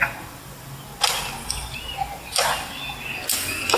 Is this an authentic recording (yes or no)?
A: yes